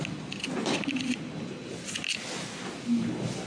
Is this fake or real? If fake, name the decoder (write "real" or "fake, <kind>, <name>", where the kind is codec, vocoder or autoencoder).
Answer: real